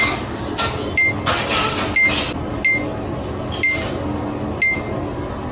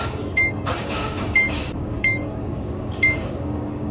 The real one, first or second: first